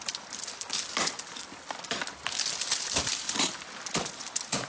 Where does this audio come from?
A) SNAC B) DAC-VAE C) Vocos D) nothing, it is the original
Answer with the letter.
D